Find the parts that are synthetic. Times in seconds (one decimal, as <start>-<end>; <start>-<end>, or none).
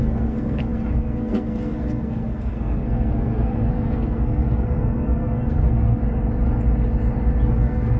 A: 0.0-6.0; 7.5-8.0